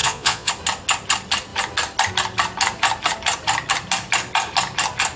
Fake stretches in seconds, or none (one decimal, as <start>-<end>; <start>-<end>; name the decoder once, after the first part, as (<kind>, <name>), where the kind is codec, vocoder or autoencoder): 0.0-0.5 (vocoder, Vocos)